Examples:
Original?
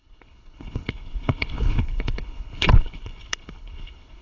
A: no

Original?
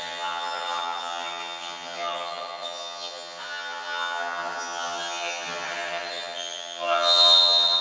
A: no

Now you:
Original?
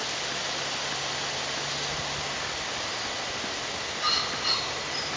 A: yes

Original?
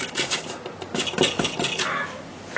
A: yes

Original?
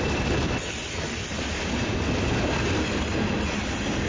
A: yes